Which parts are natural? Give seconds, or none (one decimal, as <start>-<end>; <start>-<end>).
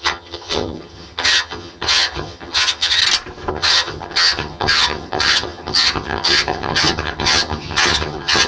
3.0-3.5